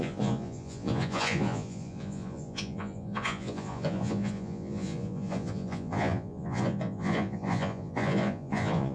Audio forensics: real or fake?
fake